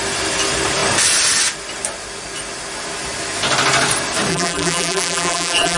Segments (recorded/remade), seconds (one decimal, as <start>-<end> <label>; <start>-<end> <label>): 0.0-4.3 recorded; 4.3-5.8 remade